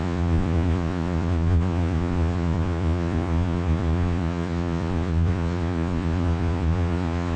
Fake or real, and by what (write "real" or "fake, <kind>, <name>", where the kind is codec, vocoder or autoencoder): fake, vocoder, Vocos